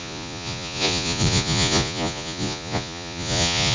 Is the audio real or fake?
fake